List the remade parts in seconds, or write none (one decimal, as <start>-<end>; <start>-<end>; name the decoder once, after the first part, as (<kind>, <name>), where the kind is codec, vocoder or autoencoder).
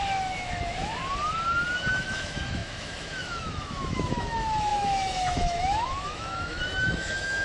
0.0-1.0 (autoencoder, DAC-VAE); 1.9-7.4